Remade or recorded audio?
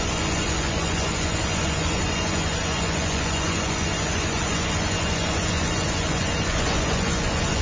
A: remade